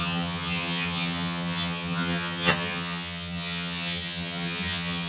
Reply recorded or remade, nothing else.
remade